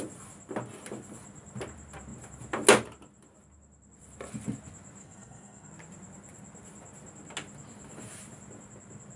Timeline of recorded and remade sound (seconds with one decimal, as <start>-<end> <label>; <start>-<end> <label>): 0.0-5.0 recorded; 5.0-5.7 remade; 5.7-9.2 recorded